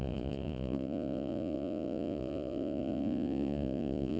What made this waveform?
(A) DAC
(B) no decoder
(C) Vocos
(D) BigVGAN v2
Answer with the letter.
C